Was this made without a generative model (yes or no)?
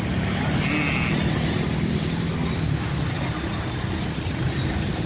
yes